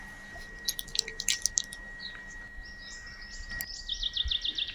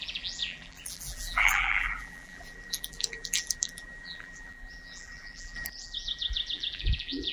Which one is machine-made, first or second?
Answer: second